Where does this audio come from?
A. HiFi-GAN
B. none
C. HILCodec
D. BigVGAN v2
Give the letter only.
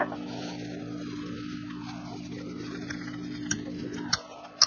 B